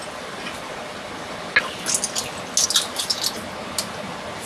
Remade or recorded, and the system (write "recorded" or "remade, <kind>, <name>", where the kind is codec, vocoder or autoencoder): recorded